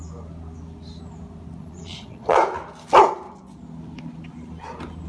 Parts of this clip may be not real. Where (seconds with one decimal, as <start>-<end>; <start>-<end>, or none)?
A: 1.6-2.4